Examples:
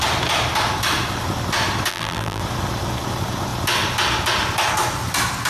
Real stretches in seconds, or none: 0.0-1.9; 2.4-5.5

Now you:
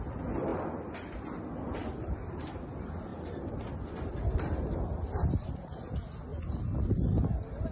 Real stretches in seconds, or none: 0.0-3.1; 5.3-7.7

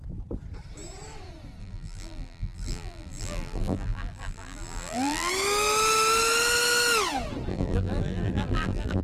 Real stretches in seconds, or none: 0.0-1.6; 5.3-7.5

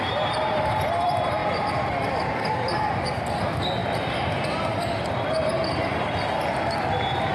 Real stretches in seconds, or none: 0.0-3.8; 4.6-7.3

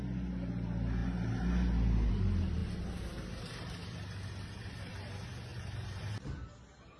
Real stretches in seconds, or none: 0.0-7.0